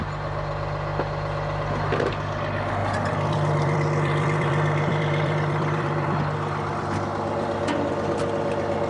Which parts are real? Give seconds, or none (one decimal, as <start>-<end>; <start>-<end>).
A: 0.0-2.8; 6.2-8.9